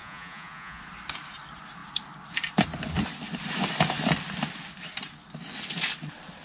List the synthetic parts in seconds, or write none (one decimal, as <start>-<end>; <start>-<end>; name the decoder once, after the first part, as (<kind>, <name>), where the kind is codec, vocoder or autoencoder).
0.0-0.8 (vocoder, Vocos)